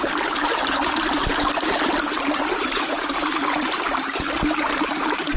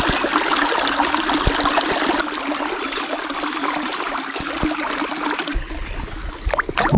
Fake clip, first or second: first